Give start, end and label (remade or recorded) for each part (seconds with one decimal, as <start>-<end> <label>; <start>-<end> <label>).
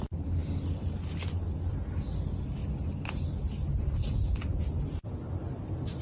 0.0-6.0 recorded